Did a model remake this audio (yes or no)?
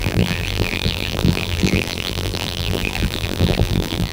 yes